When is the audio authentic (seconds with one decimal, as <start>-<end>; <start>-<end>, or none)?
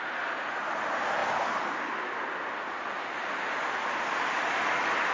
0.0-5.1